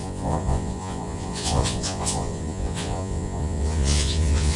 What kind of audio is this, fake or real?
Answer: fake